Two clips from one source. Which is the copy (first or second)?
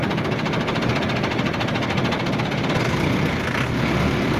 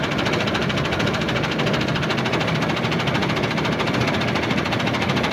second